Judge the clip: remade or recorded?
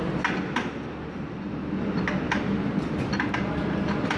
recorded